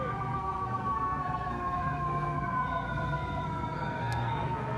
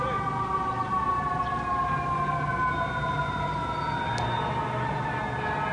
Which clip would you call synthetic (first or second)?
first